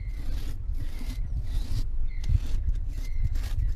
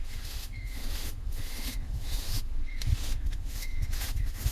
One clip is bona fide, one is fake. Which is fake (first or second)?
second